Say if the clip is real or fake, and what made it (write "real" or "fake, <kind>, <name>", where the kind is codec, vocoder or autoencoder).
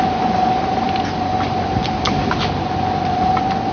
real